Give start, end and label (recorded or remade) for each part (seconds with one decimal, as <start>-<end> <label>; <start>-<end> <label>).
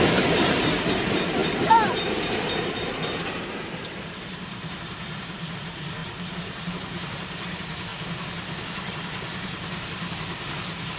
0.0-7.9 remade; 7.9-8.8 recorded; 8.8-11.0 remade